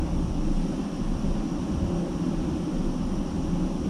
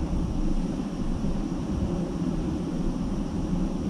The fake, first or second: second